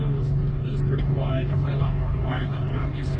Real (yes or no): no